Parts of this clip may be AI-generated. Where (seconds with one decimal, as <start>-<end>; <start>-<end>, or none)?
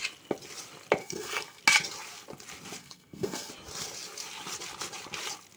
1.0-1.6; 2.8-3.5